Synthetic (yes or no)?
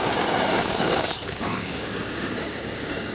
yes